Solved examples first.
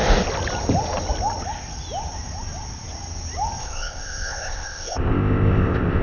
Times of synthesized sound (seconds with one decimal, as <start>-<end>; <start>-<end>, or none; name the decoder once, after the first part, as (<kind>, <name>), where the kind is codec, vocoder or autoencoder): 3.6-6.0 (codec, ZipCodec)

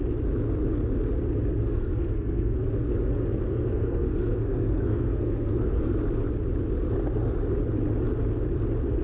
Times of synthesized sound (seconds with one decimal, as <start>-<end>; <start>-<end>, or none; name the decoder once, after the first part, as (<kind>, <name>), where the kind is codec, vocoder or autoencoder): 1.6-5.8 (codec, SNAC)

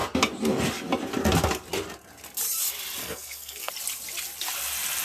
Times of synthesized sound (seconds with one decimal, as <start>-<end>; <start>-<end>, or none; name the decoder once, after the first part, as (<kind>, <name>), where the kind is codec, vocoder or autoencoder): 3.0-3.7 (codec, SNAC)